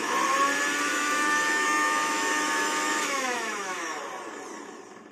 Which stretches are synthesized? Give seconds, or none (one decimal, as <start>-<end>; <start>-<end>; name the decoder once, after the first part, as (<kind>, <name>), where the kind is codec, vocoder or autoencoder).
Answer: 0.9-4.0 (autoencoder, DAC-VAE)